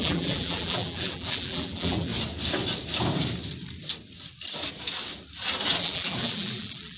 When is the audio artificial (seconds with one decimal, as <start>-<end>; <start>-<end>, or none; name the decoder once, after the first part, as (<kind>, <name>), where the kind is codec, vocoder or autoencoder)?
0.0-2.1 (vocoder, BigVGAN v2); 5.8-7.0